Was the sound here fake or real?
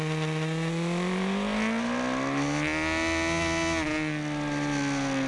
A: real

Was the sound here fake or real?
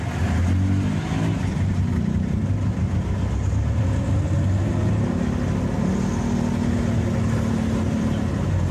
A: real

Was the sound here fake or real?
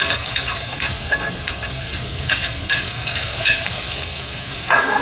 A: fake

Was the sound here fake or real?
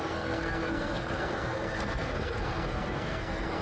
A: fake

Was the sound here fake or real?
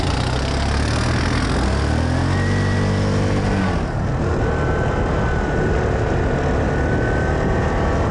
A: real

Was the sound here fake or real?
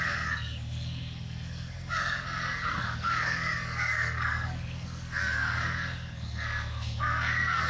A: fake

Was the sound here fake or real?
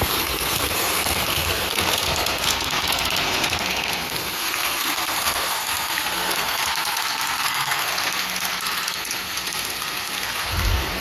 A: fake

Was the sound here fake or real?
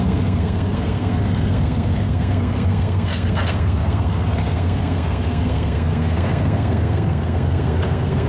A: fake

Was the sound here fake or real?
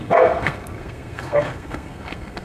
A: fake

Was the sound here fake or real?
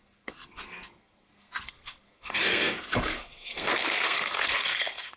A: fake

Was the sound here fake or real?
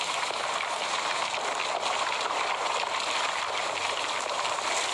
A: real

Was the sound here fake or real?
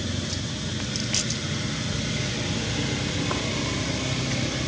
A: real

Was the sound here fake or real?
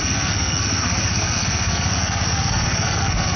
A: fake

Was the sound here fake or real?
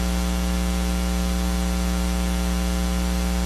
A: real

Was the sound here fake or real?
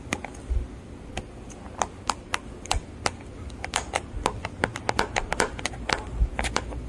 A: real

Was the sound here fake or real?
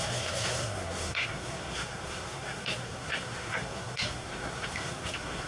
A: fake